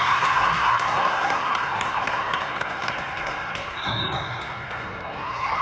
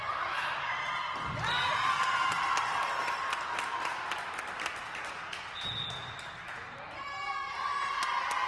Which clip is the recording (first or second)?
second